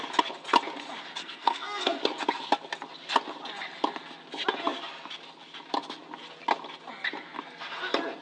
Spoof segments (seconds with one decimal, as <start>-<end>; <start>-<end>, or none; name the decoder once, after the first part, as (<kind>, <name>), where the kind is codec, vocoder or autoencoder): 1.2-2.0 (codec, SNAC)